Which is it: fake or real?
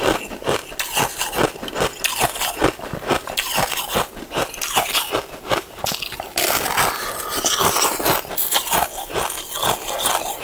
real